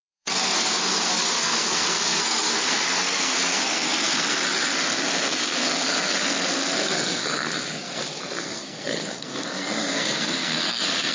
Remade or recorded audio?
remade